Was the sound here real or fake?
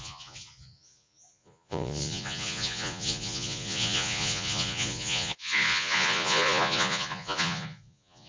fake